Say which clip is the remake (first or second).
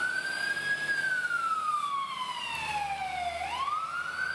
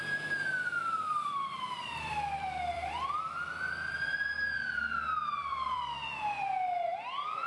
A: second